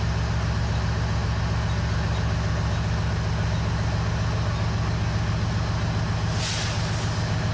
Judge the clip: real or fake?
real